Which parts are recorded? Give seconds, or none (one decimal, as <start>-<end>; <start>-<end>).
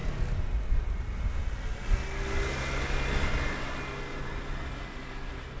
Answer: 0.0-5.6